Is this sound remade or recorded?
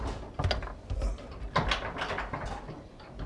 recorded